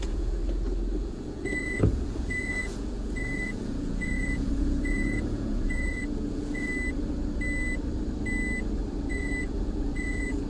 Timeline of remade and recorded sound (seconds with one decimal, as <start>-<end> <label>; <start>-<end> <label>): 0.0-0.4 remade; 0.4-1.0 recorded; 1.0-6.7 remade; 6.7-9.1 recorded; 9.1-10.5 remade